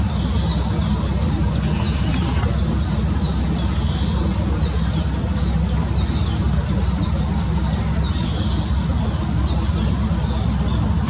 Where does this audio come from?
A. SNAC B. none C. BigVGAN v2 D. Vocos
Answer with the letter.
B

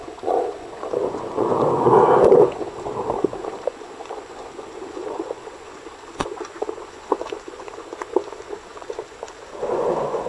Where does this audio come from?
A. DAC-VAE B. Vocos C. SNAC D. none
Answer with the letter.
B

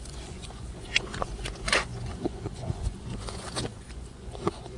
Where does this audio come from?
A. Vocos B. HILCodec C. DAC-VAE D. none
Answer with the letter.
A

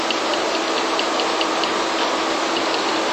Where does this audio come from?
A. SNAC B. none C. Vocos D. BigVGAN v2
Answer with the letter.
B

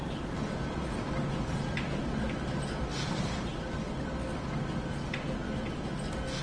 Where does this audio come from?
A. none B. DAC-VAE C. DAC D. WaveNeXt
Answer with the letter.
A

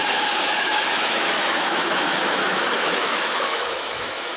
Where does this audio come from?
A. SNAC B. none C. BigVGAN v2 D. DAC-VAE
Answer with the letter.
D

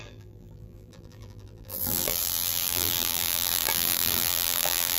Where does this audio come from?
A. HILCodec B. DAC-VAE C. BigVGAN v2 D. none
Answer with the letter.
C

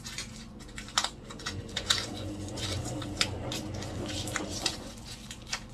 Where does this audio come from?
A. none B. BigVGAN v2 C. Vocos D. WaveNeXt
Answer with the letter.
C